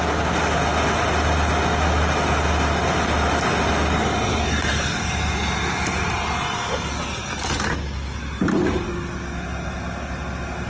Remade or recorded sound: recorded